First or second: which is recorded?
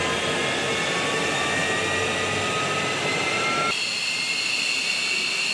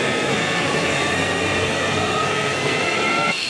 first